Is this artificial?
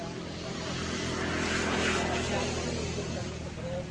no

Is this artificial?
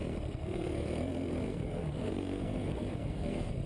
yes